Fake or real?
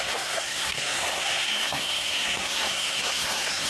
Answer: fake